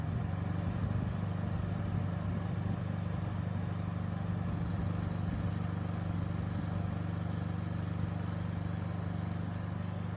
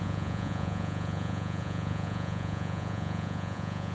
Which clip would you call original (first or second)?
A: first